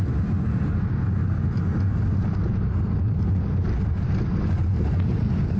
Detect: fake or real fake